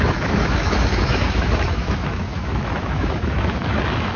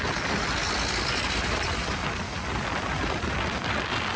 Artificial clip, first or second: first